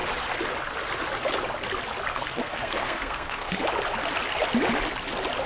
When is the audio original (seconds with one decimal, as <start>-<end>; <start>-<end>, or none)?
0.0-2.1; 3.6-5.5